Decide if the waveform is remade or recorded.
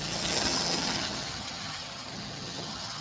remade